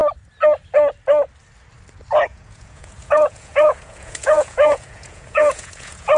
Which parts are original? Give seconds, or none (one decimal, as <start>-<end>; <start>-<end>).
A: 0.0-2.3